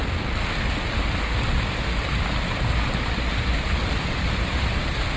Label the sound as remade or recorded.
recorded